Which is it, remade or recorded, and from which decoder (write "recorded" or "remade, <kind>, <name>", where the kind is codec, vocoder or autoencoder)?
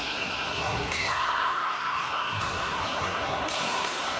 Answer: remade, codec, SNAC